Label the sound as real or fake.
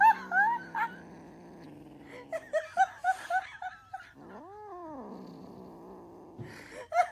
real